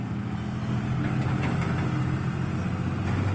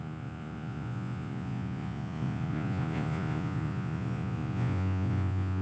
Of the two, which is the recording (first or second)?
first